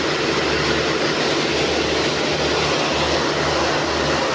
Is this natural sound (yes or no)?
yes